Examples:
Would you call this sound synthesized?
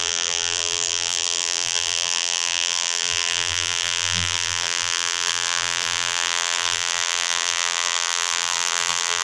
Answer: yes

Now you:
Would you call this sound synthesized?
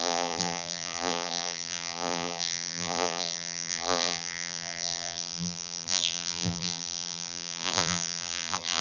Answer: yes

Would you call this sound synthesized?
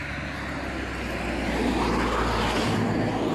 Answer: no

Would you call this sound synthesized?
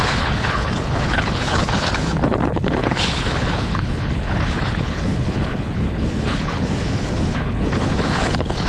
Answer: yes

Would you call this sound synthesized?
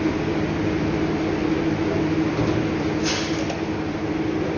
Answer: no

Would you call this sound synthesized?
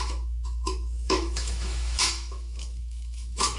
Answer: yes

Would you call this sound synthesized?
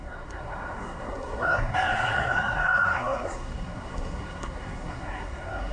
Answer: yes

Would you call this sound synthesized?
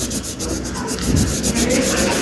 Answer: no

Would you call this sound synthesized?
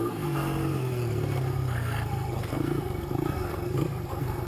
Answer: yes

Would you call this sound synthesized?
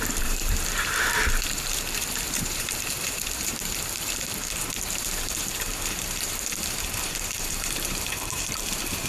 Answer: yes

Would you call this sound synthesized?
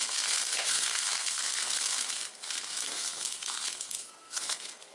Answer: yes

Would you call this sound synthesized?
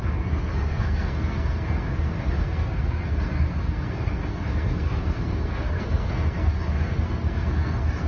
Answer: yes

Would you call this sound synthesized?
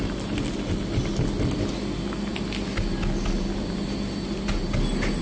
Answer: no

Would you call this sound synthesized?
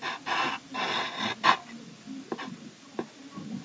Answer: no